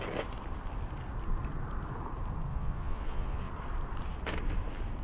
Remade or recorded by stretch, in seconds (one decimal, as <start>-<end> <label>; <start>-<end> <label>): 0.0-2.5 recorded; 2.5-3.5 remade; 3.5-5.0 recorded